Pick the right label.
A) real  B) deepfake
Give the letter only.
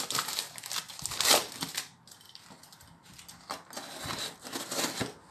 A